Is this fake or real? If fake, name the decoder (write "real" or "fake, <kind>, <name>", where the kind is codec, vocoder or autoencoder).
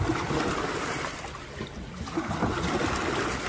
real